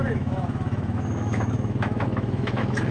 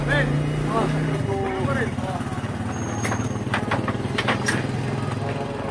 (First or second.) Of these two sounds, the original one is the second